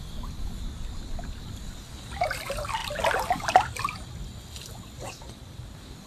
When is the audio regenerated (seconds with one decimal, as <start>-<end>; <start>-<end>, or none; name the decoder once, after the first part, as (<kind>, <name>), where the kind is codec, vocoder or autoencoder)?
none